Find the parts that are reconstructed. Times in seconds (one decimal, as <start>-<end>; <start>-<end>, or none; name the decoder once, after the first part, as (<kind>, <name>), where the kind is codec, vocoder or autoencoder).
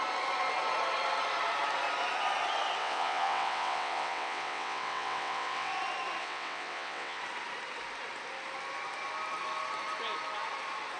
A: 2.8-5.7 (vocoder, WaveNeXt); 6.2-7.2